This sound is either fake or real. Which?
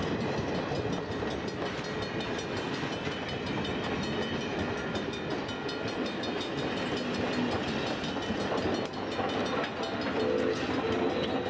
real